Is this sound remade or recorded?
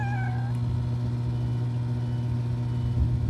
recorded